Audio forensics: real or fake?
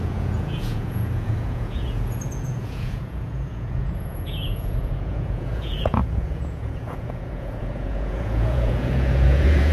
fake